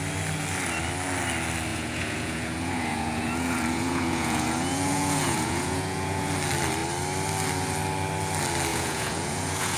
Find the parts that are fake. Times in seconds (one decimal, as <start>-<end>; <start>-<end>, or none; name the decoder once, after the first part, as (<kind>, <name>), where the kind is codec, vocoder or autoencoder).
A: 1.7-6.3 (vocoder, Vocos); 8.7-9.8